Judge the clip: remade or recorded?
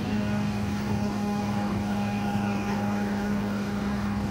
remade